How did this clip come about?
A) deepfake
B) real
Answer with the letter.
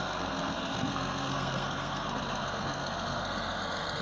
A